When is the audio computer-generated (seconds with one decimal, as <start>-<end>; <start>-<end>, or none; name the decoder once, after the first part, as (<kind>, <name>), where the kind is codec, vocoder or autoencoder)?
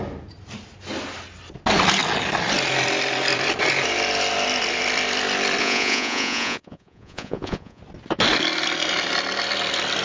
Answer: 5.6-7.8 (vocoder, Vocos)